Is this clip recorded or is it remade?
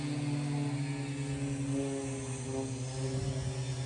recorded